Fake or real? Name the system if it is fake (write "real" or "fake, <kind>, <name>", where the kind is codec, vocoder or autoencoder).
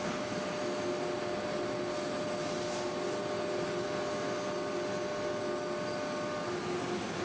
real